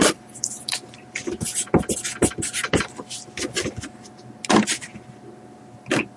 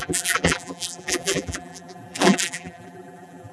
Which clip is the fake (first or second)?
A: second